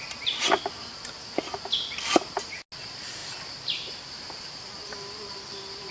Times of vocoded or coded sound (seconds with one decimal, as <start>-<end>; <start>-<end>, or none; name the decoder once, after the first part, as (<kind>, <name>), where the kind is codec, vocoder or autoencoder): none